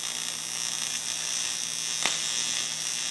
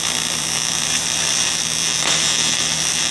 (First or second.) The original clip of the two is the first